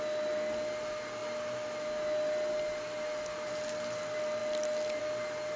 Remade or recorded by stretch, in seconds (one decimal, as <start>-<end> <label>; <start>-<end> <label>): 0.0-5.6 recorded